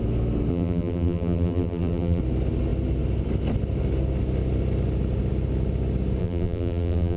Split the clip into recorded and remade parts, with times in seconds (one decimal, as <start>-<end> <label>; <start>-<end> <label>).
0.0-0.5 recorded; 0.5-2.2 remade; 2.2-6.2 recorded; 6.2-7.2 remade